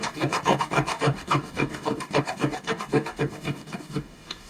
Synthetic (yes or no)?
yes